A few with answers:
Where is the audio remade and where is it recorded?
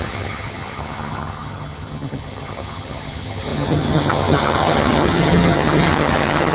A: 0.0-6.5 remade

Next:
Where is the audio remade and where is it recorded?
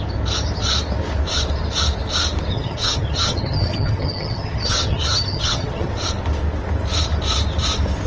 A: 0.0-2.5 recorded; 2.5-5.9 remade; 5.9-8.1 recorded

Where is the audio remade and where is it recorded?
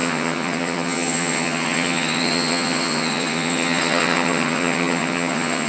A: 0.0-5.7 remade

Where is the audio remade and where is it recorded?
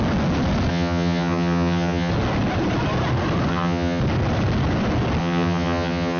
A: 0.0-0.7 recorded; 0.7-2.1 remade; 2.1-3.5 recorded; 3.5-4.0 remade; 4.0-5.2 recorded; 5.2-6.2 remade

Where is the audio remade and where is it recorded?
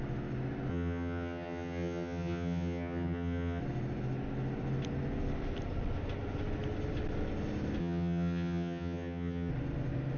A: 0.0-0.7 recorded; 0.7-3.6 remade; 3.6-7.8 recorded; 7.8-9.5 remade; 9.5-10.2 recorded